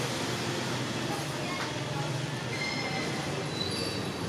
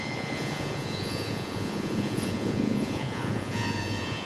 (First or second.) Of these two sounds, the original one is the first